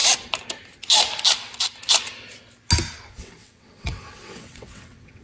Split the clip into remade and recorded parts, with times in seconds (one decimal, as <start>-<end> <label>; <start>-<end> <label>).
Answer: 0.0-3.1 recorded; 3.1-5.2 remade